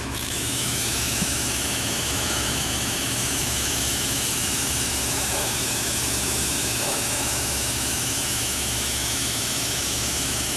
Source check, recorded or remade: remade